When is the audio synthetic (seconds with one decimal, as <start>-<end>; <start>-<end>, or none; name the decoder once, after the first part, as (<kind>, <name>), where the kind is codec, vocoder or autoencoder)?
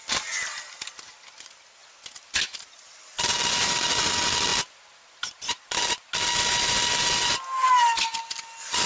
none